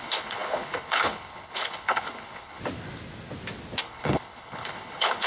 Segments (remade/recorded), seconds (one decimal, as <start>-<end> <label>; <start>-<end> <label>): 0.0-2.6 remade; 2.6-3.8 recorded; 3.8-5.3 remade